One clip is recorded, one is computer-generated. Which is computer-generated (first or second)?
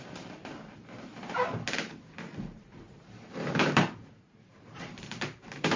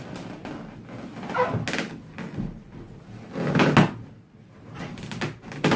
first